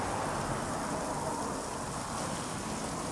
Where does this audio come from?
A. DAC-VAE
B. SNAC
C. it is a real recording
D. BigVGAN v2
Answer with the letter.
C